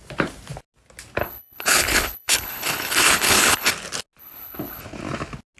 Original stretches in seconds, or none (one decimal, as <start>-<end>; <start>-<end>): 0.0-1.2; 3.7-4.2; 4.8-5.6